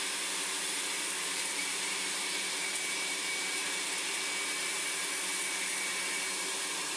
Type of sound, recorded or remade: remade